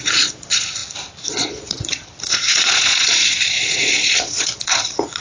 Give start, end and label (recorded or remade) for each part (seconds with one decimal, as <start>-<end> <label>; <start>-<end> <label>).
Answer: 0.0-0.8 remade; 0.8-1.3 recorded; 1.3-5.2 remade